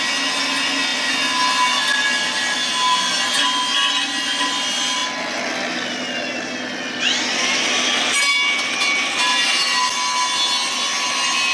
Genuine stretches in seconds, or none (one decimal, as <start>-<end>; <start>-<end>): 0.0-11.5